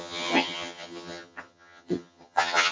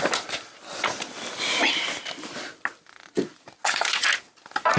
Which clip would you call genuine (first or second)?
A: second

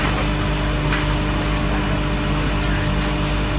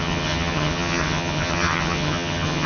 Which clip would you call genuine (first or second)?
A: first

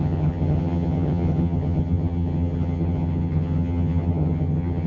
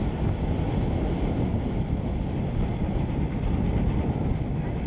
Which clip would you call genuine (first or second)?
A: second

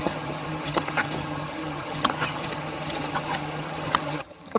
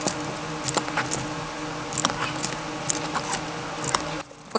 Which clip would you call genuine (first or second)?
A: second